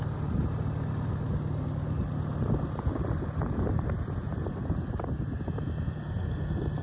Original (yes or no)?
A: yes